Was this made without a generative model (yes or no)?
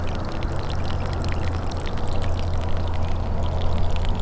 yes